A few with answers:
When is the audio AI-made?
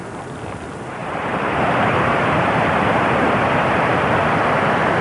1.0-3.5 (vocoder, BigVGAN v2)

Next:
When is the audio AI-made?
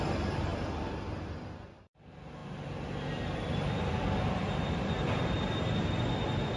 none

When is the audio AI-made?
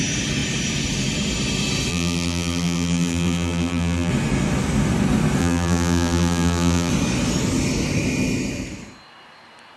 1.9-4.1 (vocoder, BigVGAN v2); 5.4-6.9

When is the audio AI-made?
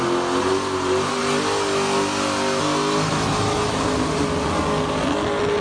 none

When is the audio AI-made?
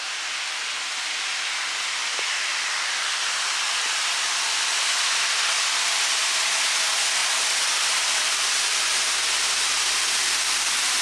2.0-4.4 (vocoder, BigVGAN v2); 7.2-9.7; 10.2-11.0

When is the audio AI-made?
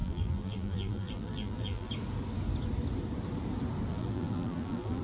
0.0-1.9 (vocoder, BigVGAN v2); 3.9-5.0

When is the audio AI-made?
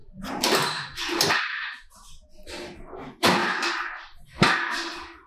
0.0-2.8 (vocoder, BigVGAN v2)